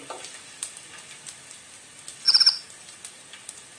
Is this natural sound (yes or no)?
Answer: yes